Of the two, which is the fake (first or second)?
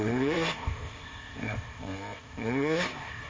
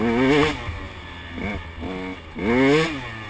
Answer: first